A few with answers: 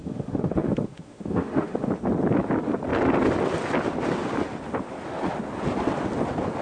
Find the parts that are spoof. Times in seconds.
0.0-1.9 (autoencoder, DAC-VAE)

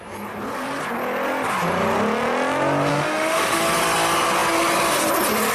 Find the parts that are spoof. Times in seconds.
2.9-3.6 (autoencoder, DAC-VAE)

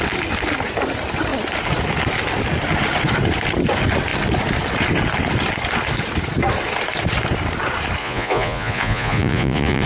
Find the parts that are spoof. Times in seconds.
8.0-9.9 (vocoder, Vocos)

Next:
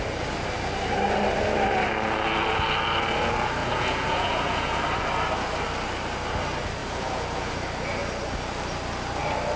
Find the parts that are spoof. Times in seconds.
3.6-4.8 (vocoder, Vocos); 6.8-7.5

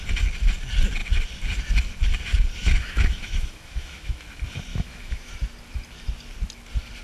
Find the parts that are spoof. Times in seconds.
2.6-4.2 (autoencoder, DAC-VAE); 4.7-5.3

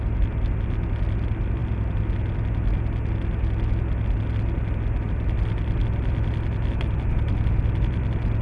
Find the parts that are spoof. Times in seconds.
none